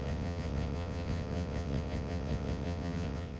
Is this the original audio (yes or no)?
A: no